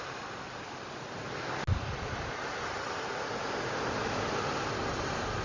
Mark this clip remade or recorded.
recorded